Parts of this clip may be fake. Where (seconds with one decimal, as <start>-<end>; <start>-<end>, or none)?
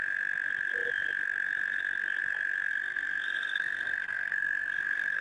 2.7-5.2